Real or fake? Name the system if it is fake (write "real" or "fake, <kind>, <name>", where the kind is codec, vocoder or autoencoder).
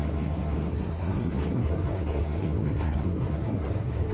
fake, codec, SNAC